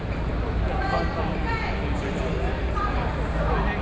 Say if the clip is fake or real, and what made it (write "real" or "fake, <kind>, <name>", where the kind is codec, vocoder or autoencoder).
real